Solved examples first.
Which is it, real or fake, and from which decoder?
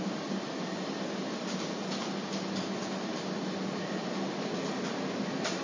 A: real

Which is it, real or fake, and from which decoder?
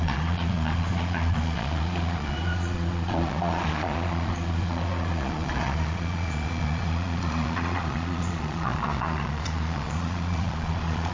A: fake, vocoder, Vocos